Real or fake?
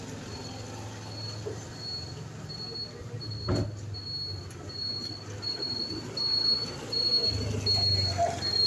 real